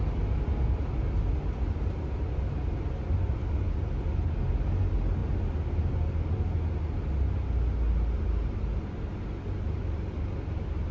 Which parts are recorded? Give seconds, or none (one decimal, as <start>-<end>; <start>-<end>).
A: 0.0-10.9

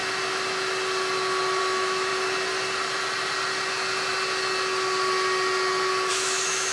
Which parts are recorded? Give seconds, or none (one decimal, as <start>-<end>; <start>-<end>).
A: 0.0-1.6; 2.1-6.1